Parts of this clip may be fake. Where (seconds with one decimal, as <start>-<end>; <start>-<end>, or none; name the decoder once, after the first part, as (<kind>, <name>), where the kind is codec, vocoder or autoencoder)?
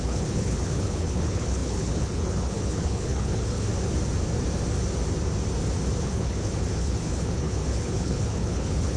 0.0-3.7 (codec, HILCodec); 6.0-9.0